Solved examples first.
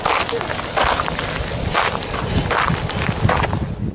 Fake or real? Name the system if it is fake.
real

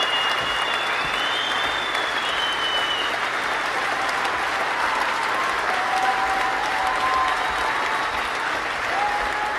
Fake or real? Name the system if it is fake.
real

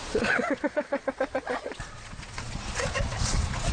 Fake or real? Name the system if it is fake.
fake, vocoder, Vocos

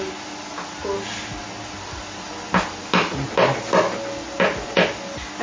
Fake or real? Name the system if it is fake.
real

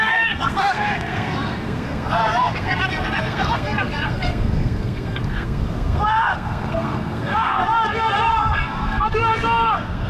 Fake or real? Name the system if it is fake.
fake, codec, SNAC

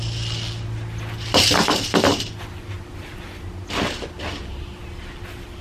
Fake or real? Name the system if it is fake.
real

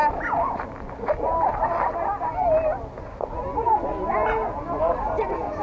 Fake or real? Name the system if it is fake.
real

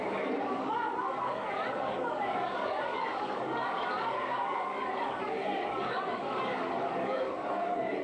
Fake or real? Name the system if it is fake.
fake, codec, DAC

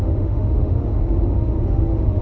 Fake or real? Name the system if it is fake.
fake, autoencoder, DAC-VAE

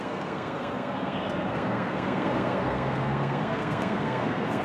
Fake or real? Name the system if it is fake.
fake, codec, SNAC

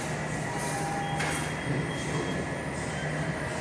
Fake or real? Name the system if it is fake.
real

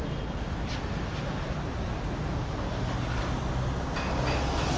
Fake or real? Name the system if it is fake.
real